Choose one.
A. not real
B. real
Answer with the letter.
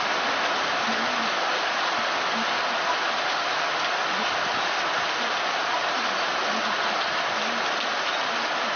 B